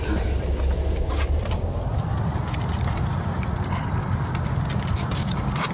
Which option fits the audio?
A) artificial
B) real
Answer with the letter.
B